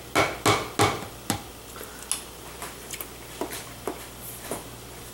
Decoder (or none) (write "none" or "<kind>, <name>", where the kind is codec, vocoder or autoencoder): none